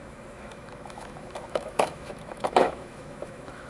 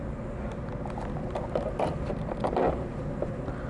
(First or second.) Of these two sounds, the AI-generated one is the first